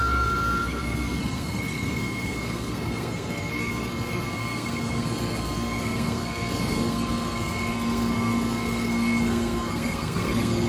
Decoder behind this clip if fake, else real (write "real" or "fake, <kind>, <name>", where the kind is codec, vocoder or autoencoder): fake, codec, SNAC